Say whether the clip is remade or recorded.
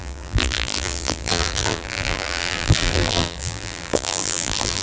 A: remade